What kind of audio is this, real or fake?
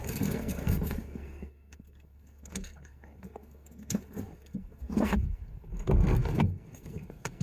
fake